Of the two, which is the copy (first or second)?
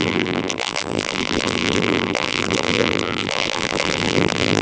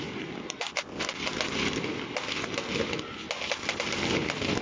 first